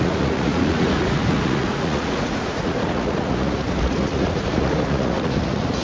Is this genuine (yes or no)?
no